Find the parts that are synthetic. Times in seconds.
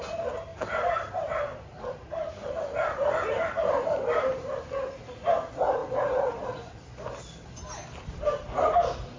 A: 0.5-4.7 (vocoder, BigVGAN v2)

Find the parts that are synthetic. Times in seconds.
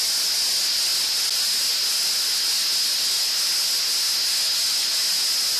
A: none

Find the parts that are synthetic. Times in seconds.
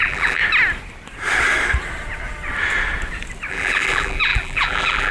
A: 0.0-0.4 (vocoder, BigVGAN v2); 3.5-5.1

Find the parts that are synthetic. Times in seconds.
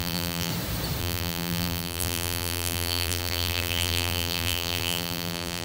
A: 0.0-0.5 (vocoder, BigVGAN v2); 1.0-5.6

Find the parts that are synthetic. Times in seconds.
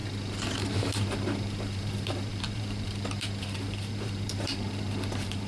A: 0.7-5.5 (vocoder, BigVGAN v2)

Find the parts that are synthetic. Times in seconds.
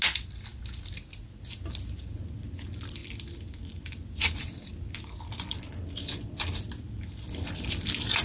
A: 4.7-8.2 (vocoder, BigVGAN v2)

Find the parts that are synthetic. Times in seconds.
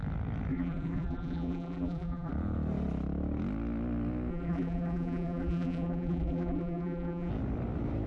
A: 0.5-2.3 (vocoder, BigVGAN v2); 4.3-7.3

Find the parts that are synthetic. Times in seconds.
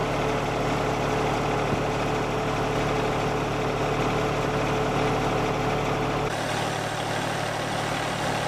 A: none